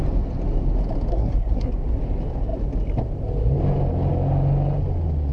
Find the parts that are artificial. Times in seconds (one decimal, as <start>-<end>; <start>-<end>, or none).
1.1-1.7